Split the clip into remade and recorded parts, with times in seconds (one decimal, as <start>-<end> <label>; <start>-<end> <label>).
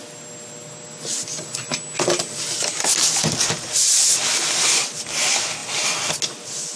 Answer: 0.0-6.8 recorded